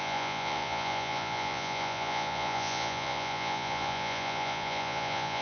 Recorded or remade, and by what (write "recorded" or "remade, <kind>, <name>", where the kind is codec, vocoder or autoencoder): remade, vocoder, Vocos